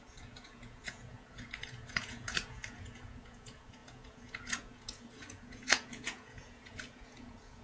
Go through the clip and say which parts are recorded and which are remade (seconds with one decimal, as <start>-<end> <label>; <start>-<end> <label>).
0.0-7.6 remade